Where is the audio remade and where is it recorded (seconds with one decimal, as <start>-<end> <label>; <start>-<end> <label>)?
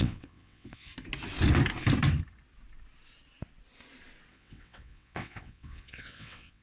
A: 0.0-0.9 remade; 0.9-4.3 recorded; 4.3-6.6 remade